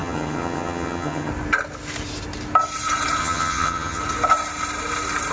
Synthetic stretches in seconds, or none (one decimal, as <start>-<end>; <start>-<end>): 0.0-1.3; 3.2-4.0